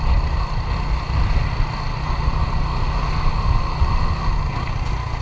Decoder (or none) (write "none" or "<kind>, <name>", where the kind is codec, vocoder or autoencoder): none